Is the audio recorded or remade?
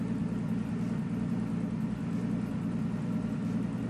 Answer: recorded